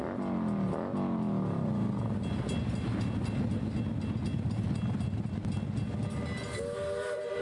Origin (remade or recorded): recorded